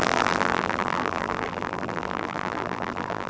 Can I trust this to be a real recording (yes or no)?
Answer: no